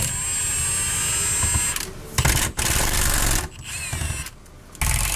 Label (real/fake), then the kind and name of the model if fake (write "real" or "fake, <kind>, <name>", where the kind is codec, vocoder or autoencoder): real